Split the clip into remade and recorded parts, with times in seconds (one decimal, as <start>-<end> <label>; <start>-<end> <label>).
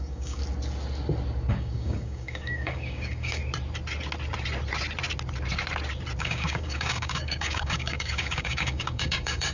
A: 0.0-0.4 remade; 0.4-1.5 recorded; 1.5-3.4 remade; 3.4-6.2 recorded; 6.2-9.5 remade